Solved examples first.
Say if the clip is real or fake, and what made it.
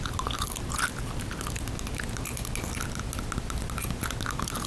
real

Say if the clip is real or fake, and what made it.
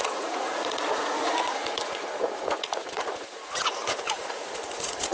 fake, vocoder, Vocos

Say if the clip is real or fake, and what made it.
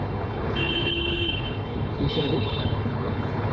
fake, codec, HILCodec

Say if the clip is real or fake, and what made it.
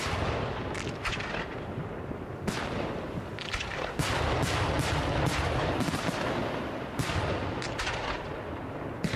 real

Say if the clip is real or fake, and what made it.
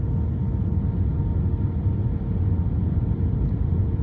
real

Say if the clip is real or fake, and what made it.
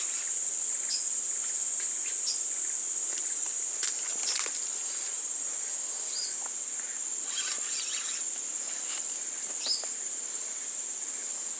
real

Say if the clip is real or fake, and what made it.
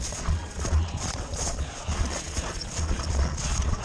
fake, vocoder, Vocos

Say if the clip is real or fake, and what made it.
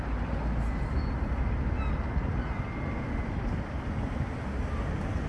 real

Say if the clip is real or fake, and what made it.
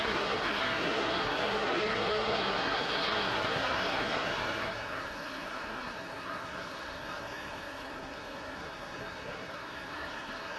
fake, codec, SNAC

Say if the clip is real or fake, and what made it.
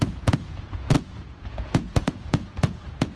fake, vocoder, Vocos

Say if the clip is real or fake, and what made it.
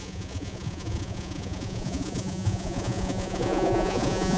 fake, vocoder, Vocos